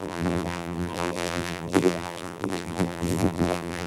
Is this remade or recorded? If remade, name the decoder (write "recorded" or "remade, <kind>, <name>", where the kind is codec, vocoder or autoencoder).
remade, vocoder, BigVGAN v2